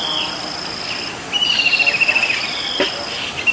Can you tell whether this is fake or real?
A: real